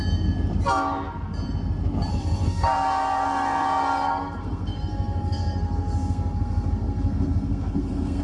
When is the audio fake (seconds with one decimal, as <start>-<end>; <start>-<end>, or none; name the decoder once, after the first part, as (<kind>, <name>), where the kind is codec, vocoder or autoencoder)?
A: 2.1-8.2 (codec, SNAC)